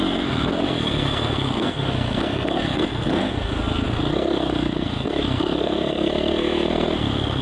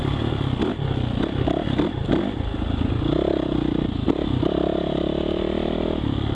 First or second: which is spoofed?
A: first